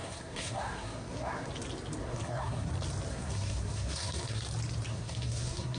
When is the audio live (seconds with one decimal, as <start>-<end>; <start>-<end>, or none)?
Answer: 1.5-2.0; 2.7-3.1; 4.4-4.9

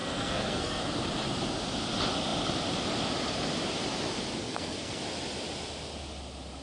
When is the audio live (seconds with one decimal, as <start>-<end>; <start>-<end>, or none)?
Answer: 0.8-4.4; 5.0-6.6

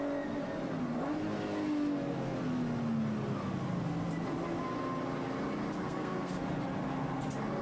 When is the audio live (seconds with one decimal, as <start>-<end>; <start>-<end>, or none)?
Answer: 0.0-5.8; 6.3-7.6

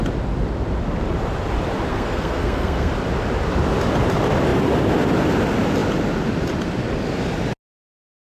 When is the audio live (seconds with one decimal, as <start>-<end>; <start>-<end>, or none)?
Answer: 0.0-1.9; 2.9-8.3

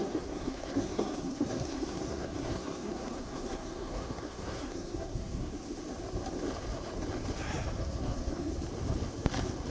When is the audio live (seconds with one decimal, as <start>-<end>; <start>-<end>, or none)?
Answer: 5.5-7.8; 8.5-9.7

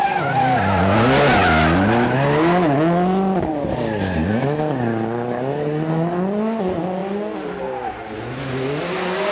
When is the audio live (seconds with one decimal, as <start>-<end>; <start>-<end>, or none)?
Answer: 0.0-9.3

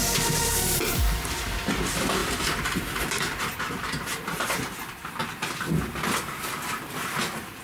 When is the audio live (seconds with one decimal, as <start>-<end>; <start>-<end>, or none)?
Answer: 0.0-7.6